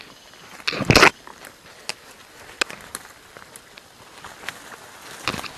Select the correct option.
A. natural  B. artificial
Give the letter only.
A